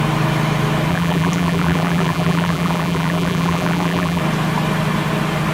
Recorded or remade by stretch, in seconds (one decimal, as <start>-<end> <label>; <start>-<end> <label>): 0.0-0.9 recorded; 0.9-4.2 remade; 4.2-5.5 recorded